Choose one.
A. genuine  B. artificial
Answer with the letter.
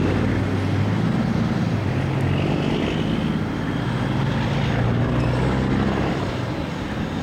A